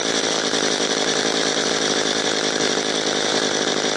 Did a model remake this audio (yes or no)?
yes